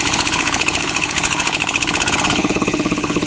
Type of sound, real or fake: fake